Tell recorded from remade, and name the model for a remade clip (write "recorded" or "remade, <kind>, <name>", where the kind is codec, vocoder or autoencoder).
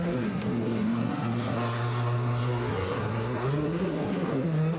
remade, codec, SNAC